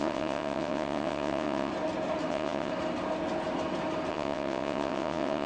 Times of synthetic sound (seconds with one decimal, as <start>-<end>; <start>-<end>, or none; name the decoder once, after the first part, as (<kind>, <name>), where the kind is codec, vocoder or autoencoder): 0.0-1.7 (vocoder, WaveNeXt); 2.3-2.7; 4.1-5.5